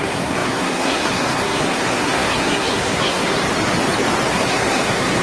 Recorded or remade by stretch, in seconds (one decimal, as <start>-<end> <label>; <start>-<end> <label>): 0.0-3.4 remade; 3.4-4.3 recorded; 4.3-5.2 remade